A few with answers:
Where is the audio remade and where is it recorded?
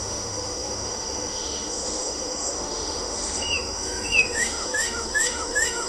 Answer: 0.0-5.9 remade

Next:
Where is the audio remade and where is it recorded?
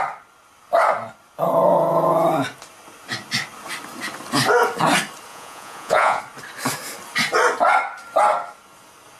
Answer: 0.0-5.3 recorded; 5.3-6.2 remade; 6.2-9.2 recorded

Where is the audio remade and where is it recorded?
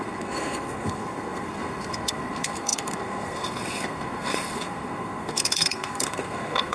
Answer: 0.0-6.7 remade